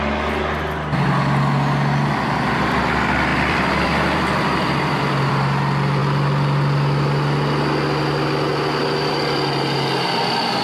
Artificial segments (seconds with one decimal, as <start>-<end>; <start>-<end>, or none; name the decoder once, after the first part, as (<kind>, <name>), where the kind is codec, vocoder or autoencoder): 3.3-5.3 (vocoder, BigVGAN v2)